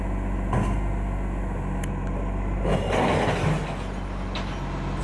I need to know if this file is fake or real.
real